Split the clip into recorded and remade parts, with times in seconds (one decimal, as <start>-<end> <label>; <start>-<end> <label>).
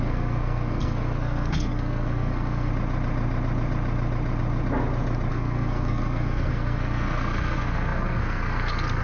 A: 0.0-2.7 remade; 2.7-5.3 recorded; 5.3-9.0 remade